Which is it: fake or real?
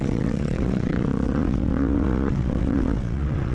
fake